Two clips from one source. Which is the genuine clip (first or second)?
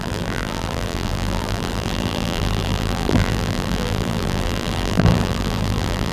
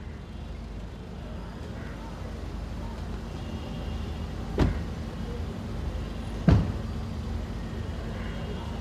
second